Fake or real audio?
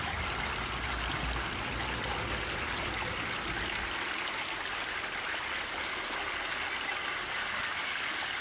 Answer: real